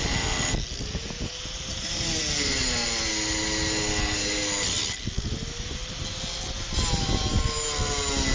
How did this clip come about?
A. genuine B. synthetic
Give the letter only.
A